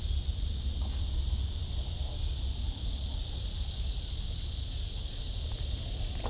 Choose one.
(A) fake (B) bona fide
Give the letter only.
B